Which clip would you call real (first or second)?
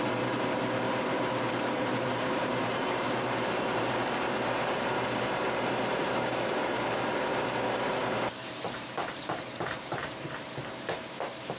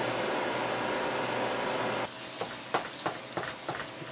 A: second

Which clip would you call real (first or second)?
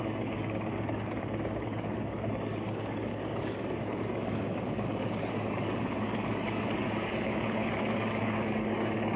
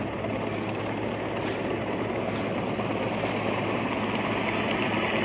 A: second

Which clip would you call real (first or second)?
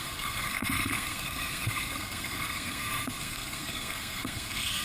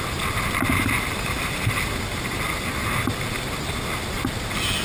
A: second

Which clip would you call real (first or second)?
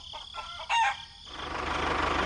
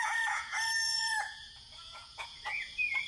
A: first